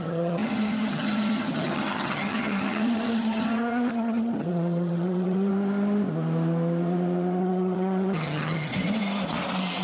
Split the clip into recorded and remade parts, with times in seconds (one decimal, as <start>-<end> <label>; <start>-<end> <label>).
0.0-5.5 remade; 5.5-7.4 recorded; 7.4-8.7 remade; 8.7-9.8 recorded